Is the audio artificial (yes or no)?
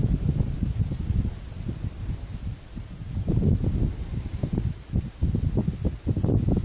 no